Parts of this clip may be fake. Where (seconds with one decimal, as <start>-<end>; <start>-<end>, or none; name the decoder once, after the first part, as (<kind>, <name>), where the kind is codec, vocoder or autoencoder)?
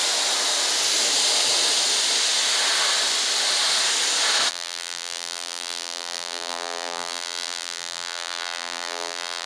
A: 4.5-9.5 (vocoder, BigVGAN v2)